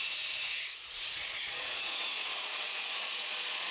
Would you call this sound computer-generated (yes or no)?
yes